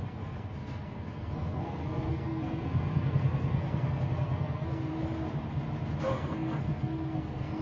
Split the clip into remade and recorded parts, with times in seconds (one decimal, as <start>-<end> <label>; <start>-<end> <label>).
0.0-4.9 remade; 4.9-6.0 recorded; 6.0-7.6 remade